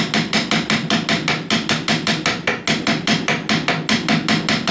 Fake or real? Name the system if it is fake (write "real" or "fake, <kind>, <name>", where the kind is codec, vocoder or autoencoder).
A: real